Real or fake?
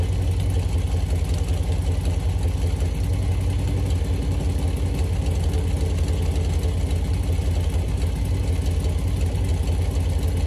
real